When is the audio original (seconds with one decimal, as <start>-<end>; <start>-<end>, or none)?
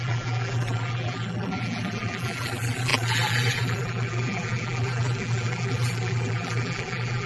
none